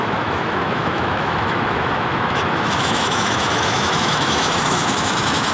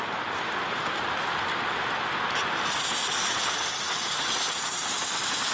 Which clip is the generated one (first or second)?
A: first